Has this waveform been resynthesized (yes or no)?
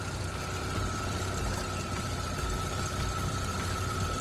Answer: yes